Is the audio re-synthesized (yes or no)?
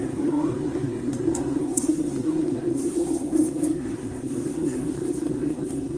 yes